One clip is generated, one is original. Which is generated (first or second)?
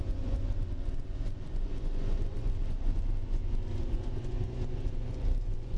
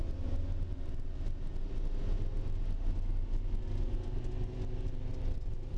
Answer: first